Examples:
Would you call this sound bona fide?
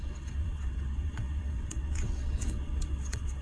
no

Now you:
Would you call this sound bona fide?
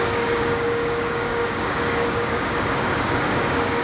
no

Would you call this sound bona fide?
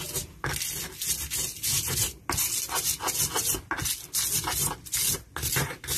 yes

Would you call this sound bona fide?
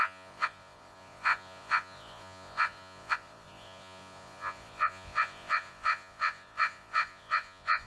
no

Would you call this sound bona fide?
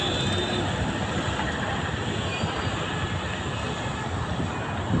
yes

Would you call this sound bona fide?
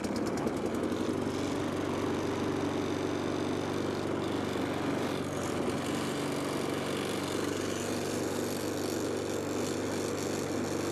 yes